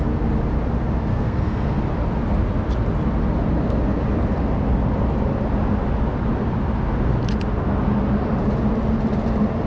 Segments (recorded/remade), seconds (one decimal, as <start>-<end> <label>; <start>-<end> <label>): 0.0-1.1 recorded; 1.1-1.8 remade; 1.8-9.7 recorded